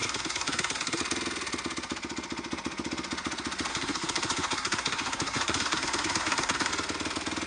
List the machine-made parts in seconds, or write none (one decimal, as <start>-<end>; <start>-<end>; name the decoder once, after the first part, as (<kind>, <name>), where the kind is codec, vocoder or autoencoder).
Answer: 0.0-1.0 (codec, SNAC); 3.7-6.7